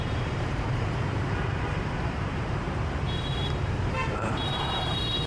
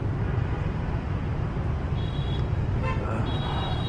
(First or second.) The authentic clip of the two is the second